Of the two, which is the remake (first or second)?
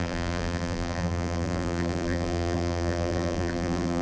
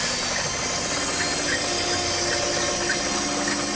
first